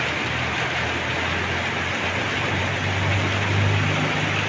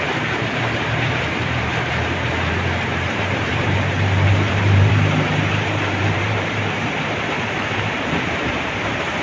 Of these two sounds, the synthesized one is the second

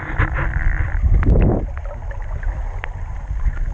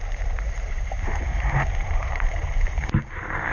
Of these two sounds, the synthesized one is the second